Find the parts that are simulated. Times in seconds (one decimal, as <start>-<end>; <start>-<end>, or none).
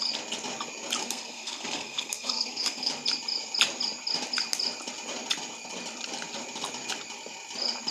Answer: 1.0-2.9